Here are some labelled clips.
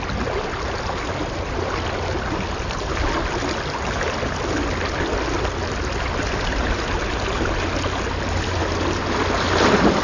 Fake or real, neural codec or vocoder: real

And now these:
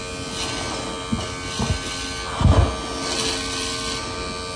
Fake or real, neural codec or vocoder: real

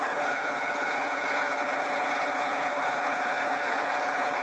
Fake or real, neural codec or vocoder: fake, codec, HILCodec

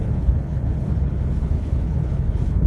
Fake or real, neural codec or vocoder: fake, codec, HILCodec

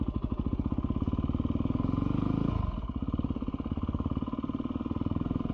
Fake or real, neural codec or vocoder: real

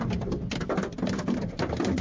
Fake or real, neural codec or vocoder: real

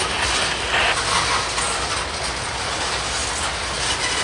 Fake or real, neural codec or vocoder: real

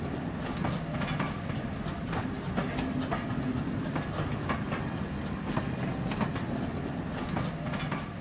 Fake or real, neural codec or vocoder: real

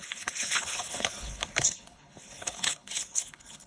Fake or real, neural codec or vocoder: fake, codec, HILCodec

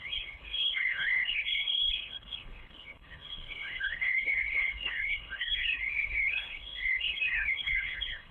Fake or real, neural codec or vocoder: fake, codec, HILCodec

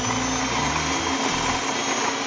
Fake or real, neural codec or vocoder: real